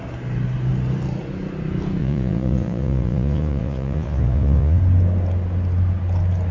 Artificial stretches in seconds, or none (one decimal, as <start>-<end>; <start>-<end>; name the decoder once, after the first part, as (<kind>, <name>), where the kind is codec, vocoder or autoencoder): 2.0-4.8 (vocoder, Vocos)